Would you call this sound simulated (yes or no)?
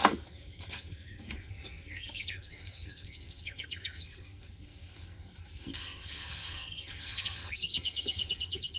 yes